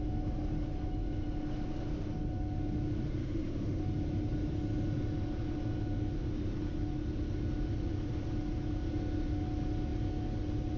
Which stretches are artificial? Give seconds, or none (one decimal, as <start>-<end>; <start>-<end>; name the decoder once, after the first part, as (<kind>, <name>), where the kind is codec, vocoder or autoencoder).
3.2-3.8 (autoencoder, DAC-VAE)